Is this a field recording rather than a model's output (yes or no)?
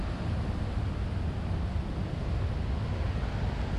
yes